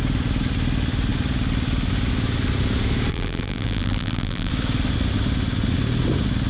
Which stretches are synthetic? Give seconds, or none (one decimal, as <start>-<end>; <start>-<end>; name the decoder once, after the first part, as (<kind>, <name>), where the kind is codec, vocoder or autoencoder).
3.1-4.5 (vocoder, BigVGAN v2)

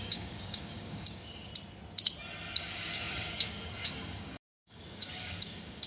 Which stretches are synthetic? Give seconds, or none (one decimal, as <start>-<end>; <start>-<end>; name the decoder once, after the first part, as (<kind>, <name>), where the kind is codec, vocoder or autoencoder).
0.0-1.5 (codec, DAC); 2.6-5.9

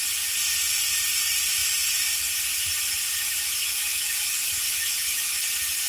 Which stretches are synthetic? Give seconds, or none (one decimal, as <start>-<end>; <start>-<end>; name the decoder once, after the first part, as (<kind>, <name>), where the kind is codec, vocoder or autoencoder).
3.1-5.4 (autoencoder, DAC-VAE)